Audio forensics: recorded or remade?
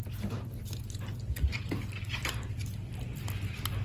recorded